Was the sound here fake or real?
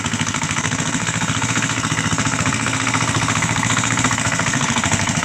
fake